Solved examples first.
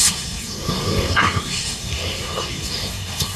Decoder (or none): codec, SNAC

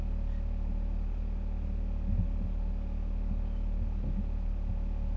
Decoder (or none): none